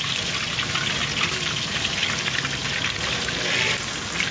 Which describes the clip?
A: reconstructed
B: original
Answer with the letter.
B